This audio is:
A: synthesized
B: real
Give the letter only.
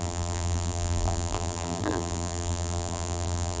A